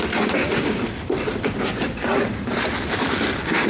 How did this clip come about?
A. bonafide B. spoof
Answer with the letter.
B